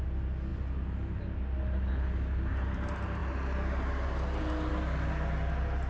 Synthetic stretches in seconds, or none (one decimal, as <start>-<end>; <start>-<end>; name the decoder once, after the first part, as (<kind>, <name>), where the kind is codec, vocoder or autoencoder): none

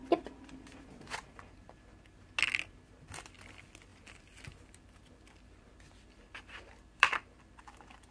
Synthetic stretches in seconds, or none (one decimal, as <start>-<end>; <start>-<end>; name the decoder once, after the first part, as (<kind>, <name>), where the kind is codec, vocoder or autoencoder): 3.9-7.6 (vocoder, BigVGAN v2)

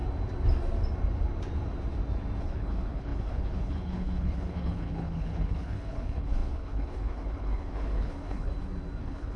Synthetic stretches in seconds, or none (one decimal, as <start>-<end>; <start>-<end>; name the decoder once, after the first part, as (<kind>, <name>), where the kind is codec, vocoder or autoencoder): 2.4-8.5 (codec, HILCodec); 9.0-9.4

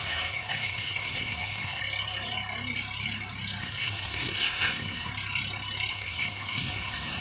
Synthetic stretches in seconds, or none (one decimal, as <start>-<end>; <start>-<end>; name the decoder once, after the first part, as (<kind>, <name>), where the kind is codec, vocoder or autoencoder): 0.0-1.8 (codec, SNAC); 3.6-5.1; 5.9-7.2

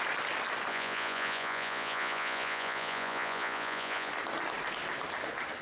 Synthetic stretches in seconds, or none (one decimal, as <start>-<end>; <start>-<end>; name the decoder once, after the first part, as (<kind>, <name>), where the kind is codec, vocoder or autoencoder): 0.7-4.1 (vocoder, Vocos)